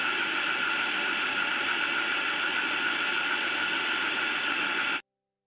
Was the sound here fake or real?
real